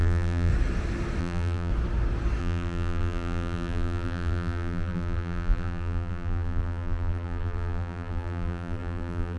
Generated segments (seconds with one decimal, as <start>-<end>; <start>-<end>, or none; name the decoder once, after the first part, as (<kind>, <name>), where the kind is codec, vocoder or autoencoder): 0.0-0.5 (vocoder, BigVGAN v2); 1.2-1.7; 2.4-9.4